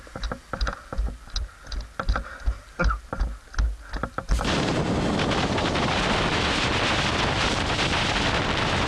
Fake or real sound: real